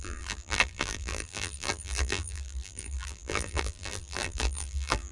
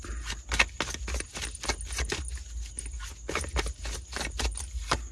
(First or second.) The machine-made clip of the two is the first